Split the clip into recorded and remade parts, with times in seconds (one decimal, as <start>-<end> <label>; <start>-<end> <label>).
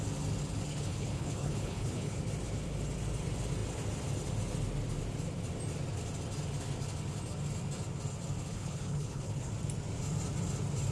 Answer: 0.0-0.7 recorded; 0.7-2.2 remade; 2.2-8.5 recorded; 8.5-9.5 remade; 9.5-10.9 recorded